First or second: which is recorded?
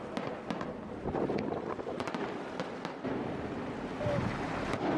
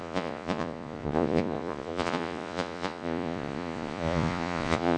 first